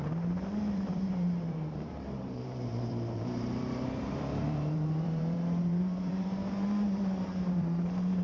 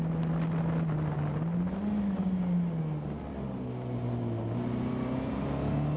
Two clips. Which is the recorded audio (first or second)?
second